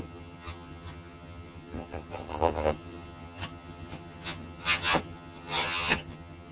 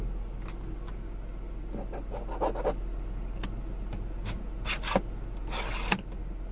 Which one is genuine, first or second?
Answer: second